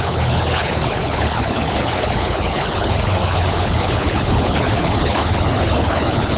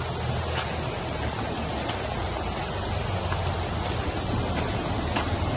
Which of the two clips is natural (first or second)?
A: second